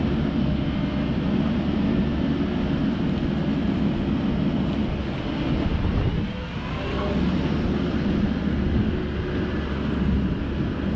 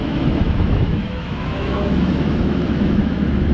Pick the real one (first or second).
first